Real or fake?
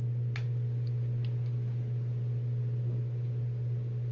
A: real